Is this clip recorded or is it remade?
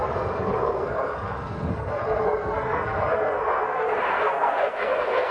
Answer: remade